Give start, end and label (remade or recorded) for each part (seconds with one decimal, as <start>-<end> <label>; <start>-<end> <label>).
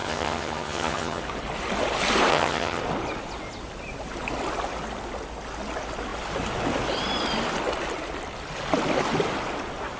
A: 0.0-1.2 remade; 1.2-2.3 recorded; 2.3-2.8 remade; 2.8-10.0 recorded